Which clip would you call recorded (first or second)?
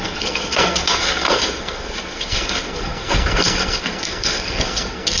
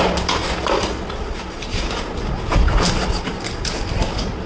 second